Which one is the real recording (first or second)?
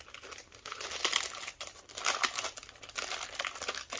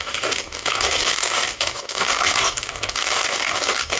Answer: first